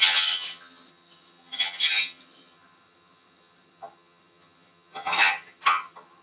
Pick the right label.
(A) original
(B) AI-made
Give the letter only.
B